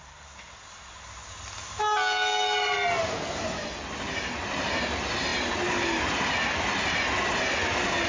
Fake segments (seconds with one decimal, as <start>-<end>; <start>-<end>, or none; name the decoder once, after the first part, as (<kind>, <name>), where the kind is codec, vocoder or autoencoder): none